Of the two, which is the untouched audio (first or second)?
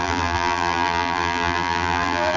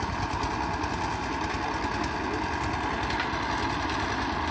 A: second